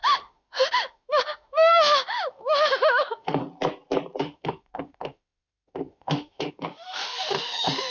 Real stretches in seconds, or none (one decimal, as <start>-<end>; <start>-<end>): 3.4-4.2